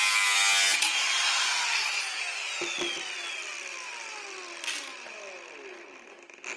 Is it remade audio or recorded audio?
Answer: recorded